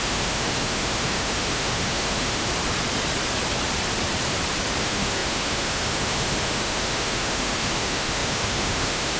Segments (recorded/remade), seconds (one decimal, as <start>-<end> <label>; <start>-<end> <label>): 0.0-2.5 remade; 2.5-4.8 recorded; 4.8-9.2 remade